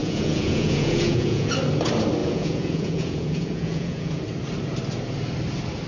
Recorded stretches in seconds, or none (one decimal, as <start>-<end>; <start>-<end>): 1.5-2.2; 4.2-5.9

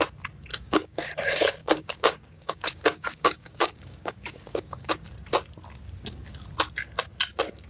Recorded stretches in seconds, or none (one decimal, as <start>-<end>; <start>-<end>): 0.0-0.5; 1.1-1.6; 4.9-7.7

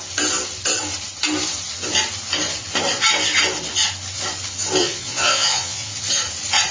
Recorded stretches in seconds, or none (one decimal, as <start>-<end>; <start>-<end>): 0.0-4.8; 5.9-6.7

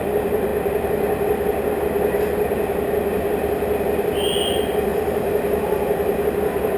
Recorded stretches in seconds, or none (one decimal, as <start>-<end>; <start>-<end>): 0.5-4.4

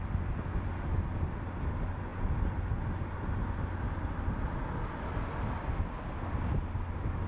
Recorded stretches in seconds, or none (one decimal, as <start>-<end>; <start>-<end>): 0.0-7.3